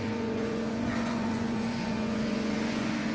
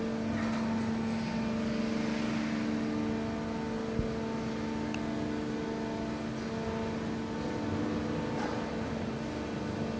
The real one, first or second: second